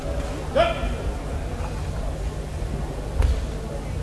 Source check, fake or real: real